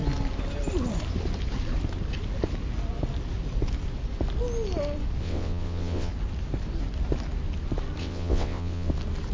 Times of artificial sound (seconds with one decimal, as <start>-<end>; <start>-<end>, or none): 5.2-6.1; 8.0-8.9